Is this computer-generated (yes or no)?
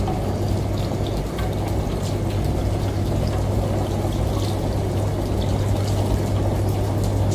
no